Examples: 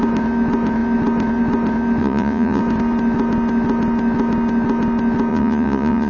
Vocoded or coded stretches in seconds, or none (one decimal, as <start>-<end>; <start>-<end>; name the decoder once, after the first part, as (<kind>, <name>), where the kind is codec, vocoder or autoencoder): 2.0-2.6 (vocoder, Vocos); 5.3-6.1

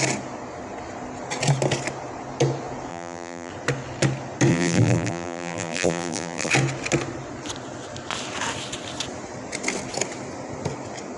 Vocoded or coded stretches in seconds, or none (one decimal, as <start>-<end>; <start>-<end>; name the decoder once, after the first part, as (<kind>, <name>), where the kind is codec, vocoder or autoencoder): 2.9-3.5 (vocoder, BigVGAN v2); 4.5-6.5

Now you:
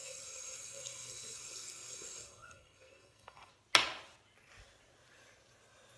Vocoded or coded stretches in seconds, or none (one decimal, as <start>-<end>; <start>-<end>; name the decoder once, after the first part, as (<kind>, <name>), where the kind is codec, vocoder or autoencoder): 0.0-3.5 (codec, SNAC)

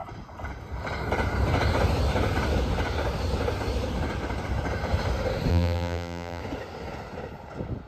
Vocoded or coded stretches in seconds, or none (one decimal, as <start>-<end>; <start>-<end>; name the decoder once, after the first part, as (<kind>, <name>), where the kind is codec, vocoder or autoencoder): 5.5-6.4 (vocoder, BigVGAN v2)

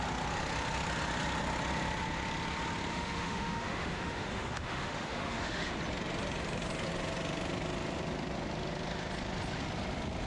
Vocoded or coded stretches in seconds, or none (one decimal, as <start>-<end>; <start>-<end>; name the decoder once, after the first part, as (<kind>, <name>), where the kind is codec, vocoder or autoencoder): 2.9-5.7 (autoencoder, DAC-VAE)

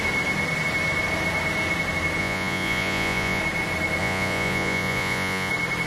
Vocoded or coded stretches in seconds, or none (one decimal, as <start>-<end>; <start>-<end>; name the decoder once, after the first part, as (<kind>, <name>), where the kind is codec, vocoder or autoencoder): 2.2-3.4 (vocoder, Vocos); 4.0-5.5